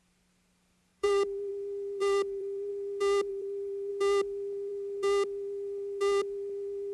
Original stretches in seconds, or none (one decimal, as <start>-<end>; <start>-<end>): 0.0-0.9; 1.5-2.0; 2.7-3.3; 3.9-6.9